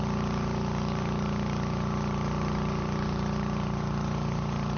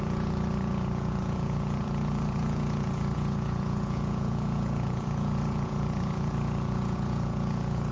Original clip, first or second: first